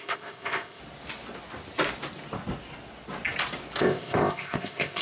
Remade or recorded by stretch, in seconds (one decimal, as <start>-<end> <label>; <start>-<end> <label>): 0.0-0.8 remade; 0.8-3.8 recorded; 3.8-5.0 remade